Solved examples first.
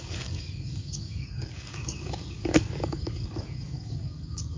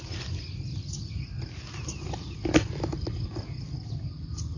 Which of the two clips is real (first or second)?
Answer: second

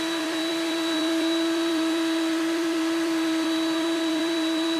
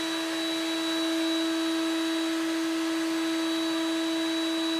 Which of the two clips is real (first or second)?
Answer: second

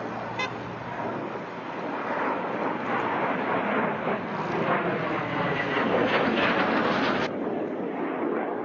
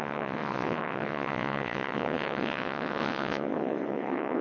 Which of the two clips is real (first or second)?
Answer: first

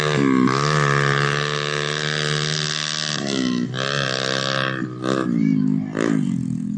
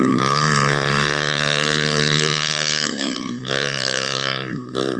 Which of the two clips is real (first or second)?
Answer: first